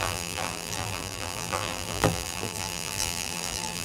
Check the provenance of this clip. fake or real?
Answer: fake